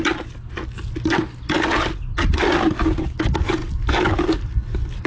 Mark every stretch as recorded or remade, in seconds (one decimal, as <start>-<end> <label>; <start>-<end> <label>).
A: 0.0-5.1 recorded